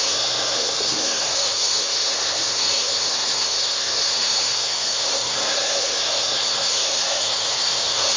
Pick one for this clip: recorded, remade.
remade